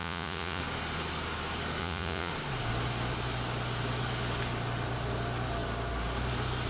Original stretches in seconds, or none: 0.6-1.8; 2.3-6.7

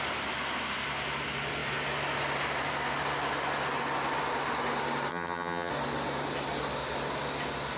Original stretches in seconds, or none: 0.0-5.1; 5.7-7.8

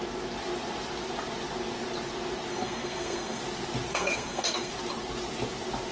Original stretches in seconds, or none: 0.0-2.5; 3.4-3.9; 4.7-5.9

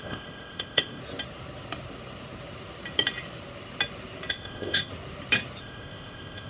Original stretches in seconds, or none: 1.0-4.3; 4.9-5.6

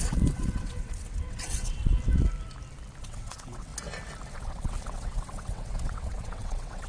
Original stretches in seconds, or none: 1.8-3.0; 3.7-4.3

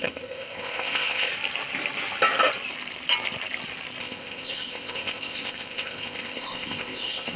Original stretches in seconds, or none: 1.3-4.0

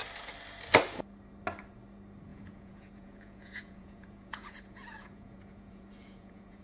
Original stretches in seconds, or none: 0.0-2.3

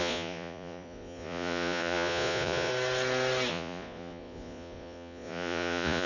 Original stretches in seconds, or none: 2.7-3.5